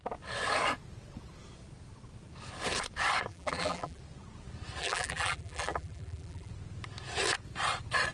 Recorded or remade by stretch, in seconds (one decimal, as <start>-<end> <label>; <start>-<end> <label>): 0.0-3.3 recorded; 3.3-4.0 remade; 4.0-4.8 recorded; 4.8-6.5 remade; 6.5-8.1 recorded